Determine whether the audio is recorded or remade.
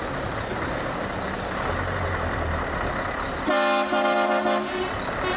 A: recorded